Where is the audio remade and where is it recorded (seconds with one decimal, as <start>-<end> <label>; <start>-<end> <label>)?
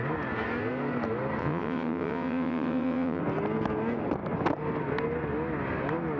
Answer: 0.0-1.4 recorded; 1.4-3.2 remade; 3.2-6.2 recorded